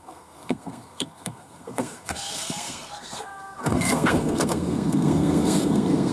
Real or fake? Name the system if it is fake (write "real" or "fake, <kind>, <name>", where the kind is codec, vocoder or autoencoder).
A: fake, codec, SNAC